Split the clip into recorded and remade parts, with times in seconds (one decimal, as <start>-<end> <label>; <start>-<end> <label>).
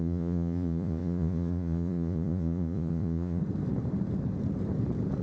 0.0-3.4 remade; 3.4-5.2 recorded